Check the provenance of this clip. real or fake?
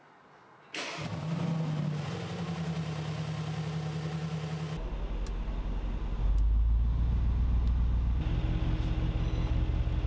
real